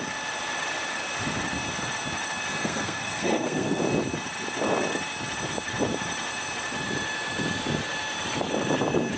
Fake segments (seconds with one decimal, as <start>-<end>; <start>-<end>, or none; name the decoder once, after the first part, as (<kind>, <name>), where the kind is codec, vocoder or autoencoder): 2.6-3.8 (codec, SNAC)